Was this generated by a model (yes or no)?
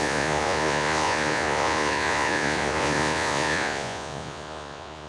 yes